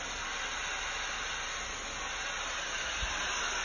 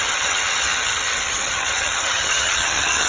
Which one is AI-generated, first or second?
second